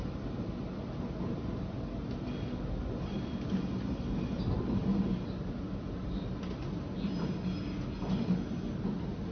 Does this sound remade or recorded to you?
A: recorded